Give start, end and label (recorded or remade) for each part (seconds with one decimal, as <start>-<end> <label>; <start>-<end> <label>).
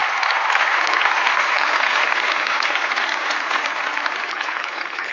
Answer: 0.0-1.5 recorded; 1.5-2.0 remade; 2.0-4.3 recorded; 4.3-5.1 remade